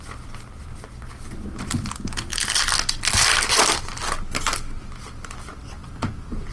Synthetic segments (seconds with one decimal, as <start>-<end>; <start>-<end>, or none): none